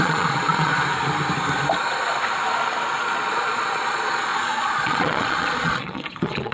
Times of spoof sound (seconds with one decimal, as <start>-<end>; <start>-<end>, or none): 0.0-0.7; 3.0-6.5